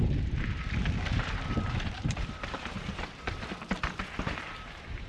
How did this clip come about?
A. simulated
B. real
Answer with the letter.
A